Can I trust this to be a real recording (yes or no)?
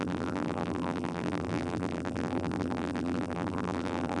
no